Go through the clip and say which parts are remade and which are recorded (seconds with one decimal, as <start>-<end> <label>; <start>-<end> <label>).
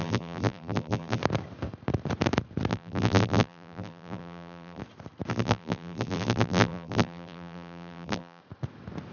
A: 0.0-1.2 remade; 1.2-2.7 recorded; 2.7-4.8 remade; 4.8-5.3 recorded; 5.3-8.4 remade; 8.4-9.1 recorded